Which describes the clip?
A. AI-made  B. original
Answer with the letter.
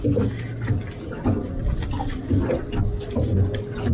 B